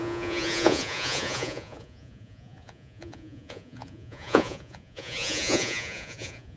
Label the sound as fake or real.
fake